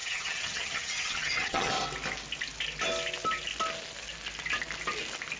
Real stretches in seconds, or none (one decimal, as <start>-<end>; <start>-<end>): 1.7-5.4